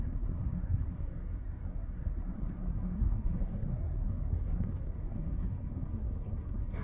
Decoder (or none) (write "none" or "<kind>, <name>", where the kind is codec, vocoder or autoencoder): codec, SNAC